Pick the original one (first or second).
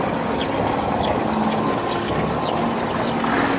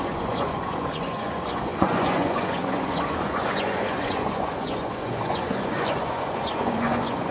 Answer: first